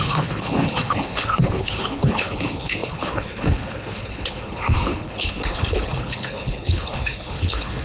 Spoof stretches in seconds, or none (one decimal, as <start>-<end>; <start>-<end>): 0.0-7.8